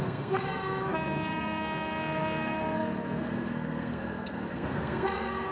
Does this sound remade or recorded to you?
remade